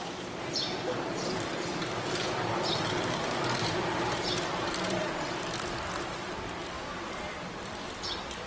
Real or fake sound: fake